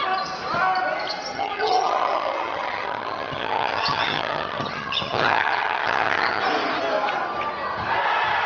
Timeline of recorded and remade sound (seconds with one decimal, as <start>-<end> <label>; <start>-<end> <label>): 0.0-1.3 recorded; 1.3-6.4 remade; 6.4-8.5 recorded